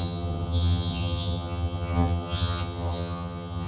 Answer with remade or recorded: remade